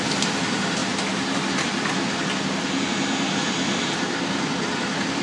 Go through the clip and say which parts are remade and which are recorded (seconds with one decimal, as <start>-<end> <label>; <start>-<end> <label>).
0.0-0.8 remade; 0.8-3.5 recorded; 3.5-5.2 remade